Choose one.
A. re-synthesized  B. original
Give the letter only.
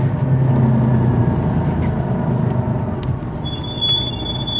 B